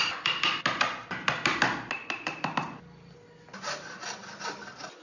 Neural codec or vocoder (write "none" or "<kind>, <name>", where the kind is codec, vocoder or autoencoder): none